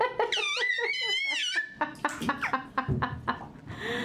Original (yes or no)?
yes